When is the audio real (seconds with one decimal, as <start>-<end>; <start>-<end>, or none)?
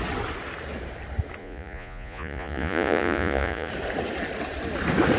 0.0-1.4; 3.7-5.2